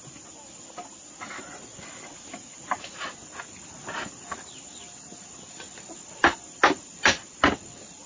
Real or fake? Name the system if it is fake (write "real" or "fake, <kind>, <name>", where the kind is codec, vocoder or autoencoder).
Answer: real